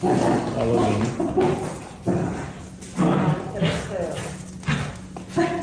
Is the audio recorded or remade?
recorded